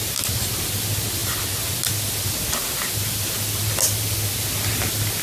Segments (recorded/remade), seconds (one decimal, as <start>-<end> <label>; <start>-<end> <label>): 0.0-5.2 recorded